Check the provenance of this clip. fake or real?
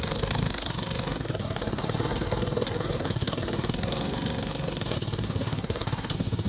fake